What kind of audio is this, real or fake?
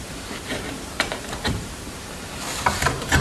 fake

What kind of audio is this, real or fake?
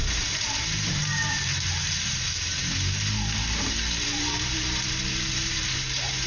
fake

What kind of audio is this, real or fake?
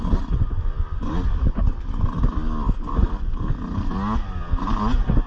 real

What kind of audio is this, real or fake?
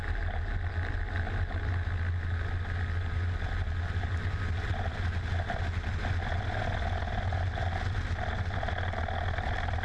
real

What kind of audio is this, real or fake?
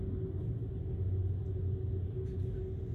real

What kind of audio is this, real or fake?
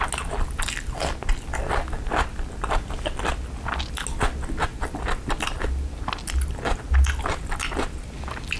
real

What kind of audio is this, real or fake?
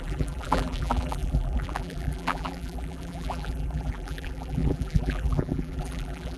fake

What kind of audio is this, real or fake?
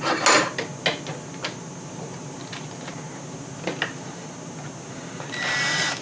real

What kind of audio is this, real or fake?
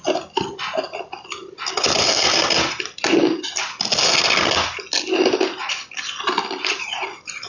real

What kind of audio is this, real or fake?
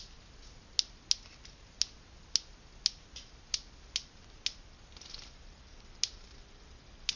real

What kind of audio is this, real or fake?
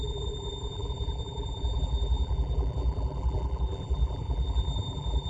fake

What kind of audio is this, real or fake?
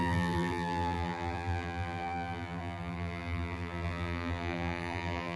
fake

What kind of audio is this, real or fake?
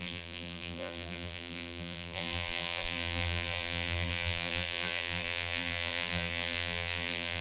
fake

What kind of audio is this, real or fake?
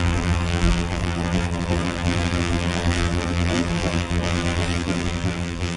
fake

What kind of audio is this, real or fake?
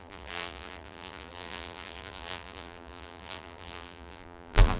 fake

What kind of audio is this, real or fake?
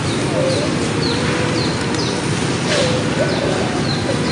real